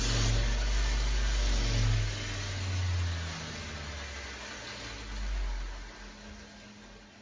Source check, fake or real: real